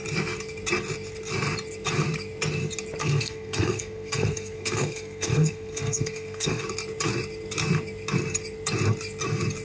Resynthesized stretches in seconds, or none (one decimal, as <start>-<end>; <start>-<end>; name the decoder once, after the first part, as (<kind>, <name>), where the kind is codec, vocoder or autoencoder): 3.0-6.6 (codec, SNAC)